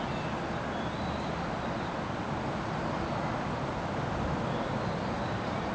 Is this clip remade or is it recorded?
recorded